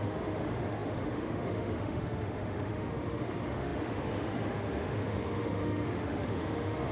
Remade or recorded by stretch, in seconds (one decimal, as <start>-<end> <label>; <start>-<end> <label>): 0.0-6.9 remade